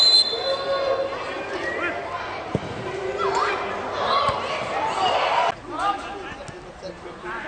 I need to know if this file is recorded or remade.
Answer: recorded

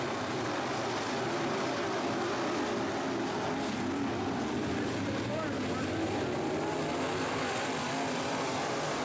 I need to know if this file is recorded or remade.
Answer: recorded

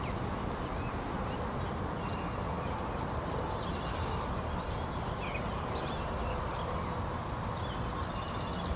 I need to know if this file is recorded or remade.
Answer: recorded